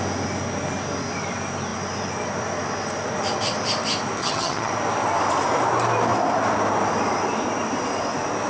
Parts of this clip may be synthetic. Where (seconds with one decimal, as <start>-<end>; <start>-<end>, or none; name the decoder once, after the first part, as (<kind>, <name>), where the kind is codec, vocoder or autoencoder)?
4.2-4.7 (vocoder, HiFi-GAN)